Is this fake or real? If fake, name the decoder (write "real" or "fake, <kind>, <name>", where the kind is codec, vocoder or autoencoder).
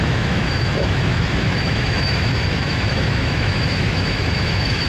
fake, autoencoder, DAC-VAE